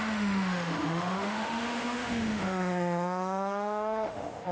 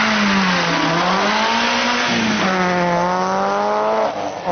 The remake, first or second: first